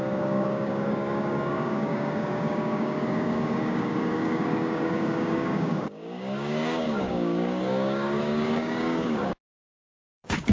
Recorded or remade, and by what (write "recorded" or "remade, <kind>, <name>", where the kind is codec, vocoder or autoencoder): remade, codec, DAC